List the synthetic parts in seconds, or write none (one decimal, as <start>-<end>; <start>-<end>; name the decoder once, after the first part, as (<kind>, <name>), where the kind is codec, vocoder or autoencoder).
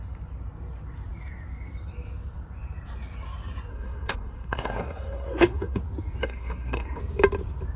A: 3.7-5.8 (codec, SNAC); 6.2-7.0